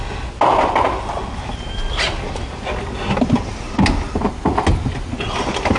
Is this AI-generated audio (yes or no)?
no